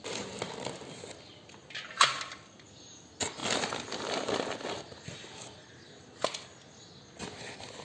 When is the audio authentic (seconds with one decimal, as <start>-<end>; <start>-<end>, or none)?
0.0-7.8